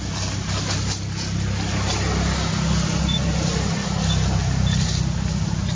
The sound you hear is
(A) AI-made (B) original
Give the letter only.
B